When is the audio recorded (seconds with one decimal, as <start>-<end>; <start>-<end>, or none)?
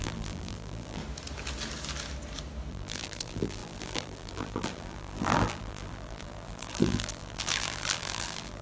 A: 1.0-2.7